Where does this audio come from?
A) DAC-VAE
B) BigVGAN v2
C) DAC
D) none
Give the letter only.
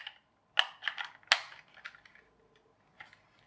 D